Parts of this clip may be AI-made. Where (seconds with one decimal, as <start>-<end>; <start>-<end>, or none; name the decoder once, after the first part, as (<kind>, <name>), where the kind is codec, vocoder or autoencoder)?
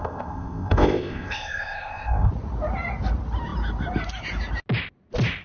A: 0.0-2.3 (codec, ZipCodec)